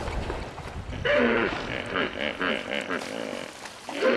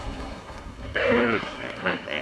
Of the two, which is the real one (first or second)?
first